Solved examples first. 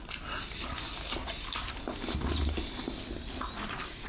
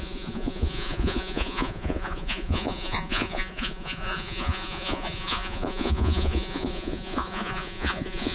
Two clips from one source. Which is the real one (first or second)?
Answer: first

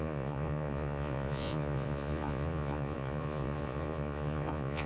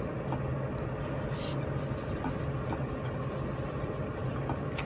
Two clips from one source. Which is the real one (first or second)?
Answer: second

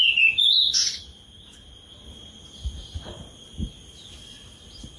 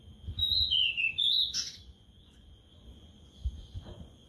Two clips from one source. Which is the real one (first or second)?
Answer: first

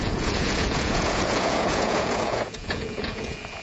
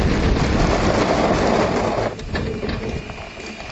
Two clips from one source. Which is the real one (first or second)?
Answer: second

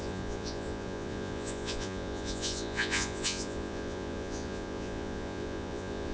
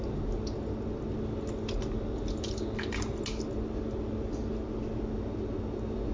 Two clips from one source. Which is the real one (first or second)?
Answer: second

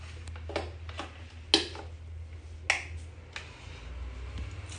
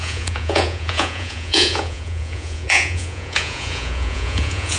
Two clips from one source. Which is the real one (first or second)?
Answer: first